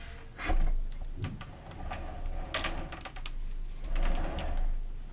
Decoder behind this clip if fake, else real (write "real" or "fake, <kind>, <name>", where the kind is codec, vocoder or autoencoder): real